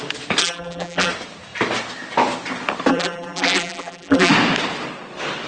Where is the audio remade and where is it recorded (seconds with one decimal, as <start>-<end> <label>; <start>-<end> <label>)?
0.0-0.4 recorded; 0.4-1.1 remade; 1.1-2.9 recorded; 2.9-4.3 remade; 4.3-5.5 recorded